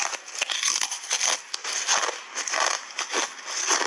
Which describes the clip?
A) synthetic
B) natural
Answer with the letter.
B